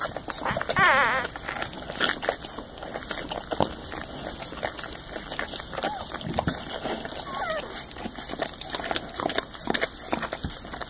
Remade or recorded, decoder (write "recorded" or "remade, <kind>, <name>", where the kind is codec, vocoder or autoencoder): recorded